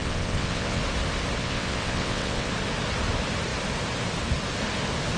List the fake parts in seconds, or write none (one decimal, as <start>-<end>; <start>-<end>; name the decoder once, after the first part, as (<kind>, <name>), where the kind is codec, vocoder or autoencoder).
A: 0.0-0.8 (vocoder, WaveNeXt); 1.4-2.5